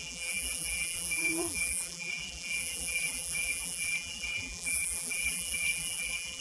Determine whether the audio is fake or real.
fake